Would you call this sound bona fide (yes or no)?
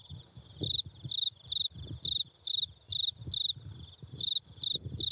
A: yes